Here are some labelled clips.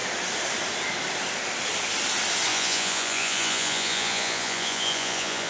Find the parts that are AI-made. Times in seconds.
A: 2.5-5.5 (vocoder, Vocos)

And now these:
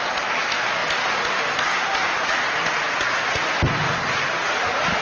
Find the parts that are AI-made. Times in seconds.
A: none